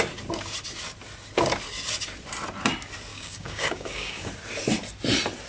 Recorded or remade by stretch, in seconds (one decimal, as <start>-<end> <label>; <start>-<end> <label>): 0.0-3.1 recorded; 3.1-4.3 remade; 4.3-5.5 recorded